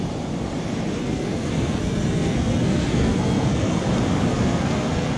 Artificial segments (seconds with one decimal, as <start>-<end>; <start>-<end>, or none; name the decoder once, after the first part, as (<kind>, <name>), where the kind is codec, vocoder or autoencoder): 1.0-3.8 (codec, SNAC); 4.3-5.2